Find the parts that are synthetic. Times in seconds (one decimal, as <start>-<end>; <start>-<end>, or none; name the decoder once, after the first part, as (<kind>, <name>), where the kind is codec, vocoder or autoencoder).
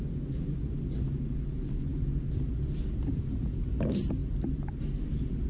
none